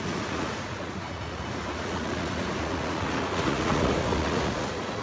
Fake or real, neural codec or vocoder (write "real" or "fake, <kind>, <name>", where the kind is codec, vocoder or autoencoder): fake, vocoder, Vocos